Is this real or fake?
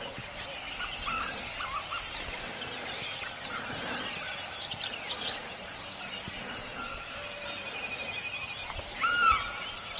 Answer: real